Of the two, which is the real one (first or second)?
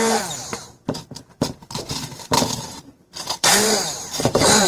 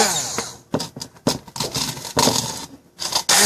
second